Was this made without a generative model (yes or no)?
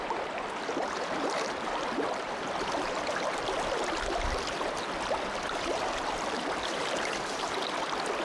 no